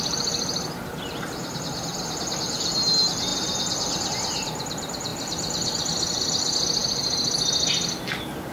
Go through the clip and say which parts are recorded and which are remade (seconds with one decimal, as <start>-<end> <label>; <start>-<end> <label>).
0.0-8.5 recorded